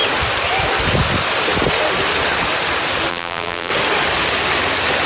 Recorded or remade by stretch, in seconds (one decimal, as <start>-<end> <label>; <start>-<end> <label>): 0.0-3.1 recorded; 3.1-3.7 remade; 3.7-5.1 recorded